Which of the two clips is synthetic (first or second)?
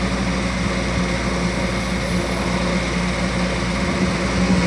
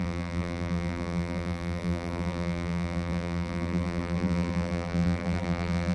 second